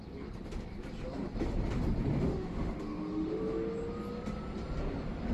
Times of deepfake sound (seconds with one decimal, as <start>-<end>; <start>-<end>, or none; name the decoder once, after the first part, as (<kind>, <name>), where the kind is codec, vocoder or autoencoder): 2.1-3.4 (autoencoder, DAC-VAE)